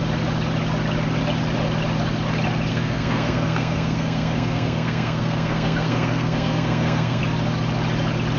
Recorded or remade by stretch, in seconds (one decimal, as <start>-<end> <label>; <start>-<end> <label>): 0.0-2.7 recorded; 2.7-7.2 remade; 7.2-8.4 recorded

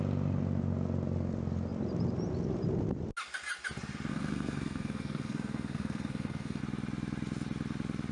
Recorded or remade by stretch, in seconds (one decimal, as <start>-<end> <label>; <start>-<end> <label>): 0.0-4.1 recorded; 4.1-6.6 remade; 6.6-8.1 recorded

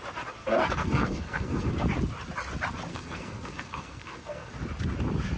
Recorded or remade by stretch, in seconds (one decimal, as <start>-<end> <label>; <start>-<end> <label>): 0.0-0.4 recorded; 0.4-1.7 remade; 1.7-2.9 recorded; 2.9-4.5 remade; 4.5-5.4 recorded

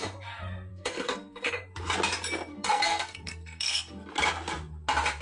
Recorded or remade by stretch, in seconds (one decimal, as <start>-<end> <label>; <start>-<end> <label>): 0.0-0.7 recorded; 0.7-1.5 remade; 1.5-2.5 recorded; 2.5-4.1 remade; 4.1-5.2 recorded

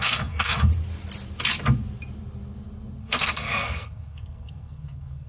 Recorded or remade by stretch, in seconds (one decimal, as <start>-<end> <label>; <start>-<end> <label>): 0.0-0.7 remade; 0.7-3.0 recorded; 3.0-5.3 remade